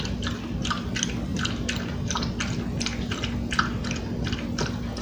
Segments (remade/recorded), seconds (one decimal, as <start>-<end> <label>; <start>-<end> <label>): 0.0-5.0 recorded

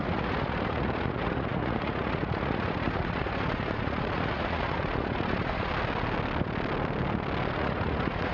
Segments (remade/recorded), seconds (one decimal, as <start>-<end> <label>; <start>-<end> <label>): 0.0-5.7 remade; 5.7-7.5 recorded; 7.5-8.3 remade

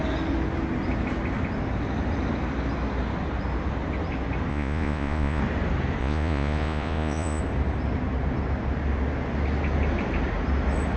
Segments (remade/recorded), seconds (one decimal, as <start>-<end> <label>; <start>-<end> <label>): 0.0-4.5 recorded; 4.5-5.4 remade; 5.4-6.0 recorded; 6.0-7.4 remade; 7.4-11.0 recorded

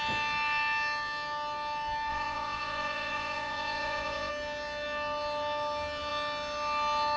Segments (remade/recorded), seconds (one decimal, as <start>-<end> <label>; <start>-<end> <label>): 0.0-2.1 recorded; 2.1-4.3 remade; 4.3-7.2 recorded